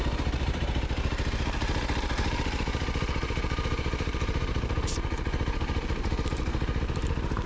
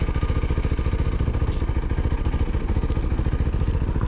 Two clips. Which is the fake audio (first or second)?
first